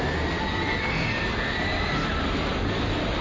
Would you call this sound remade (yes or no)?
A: no